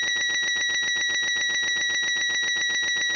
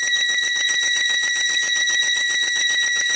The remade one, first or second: second